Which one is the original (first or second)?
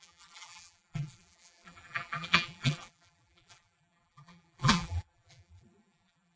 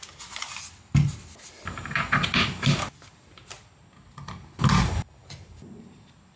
second